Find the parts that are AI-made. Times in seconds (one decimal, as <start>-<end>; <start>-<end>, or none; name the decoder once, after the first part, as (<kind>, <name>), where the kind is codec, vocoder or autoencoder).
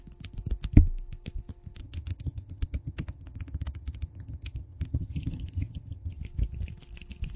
1.8-6.2 (vocoder, HiFi-GAN)